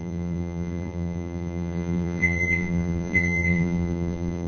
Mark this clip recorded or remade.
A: remade